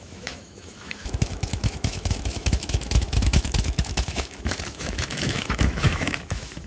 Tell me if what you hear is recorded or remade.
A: remade